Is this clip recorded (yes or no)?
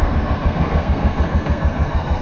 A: no